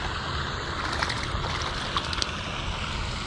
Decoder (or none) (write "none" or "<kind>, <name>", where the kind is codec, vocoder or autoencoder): none